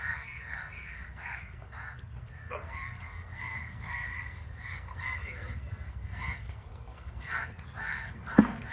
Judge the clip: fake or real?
fake